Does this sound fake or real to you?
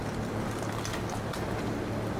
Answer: real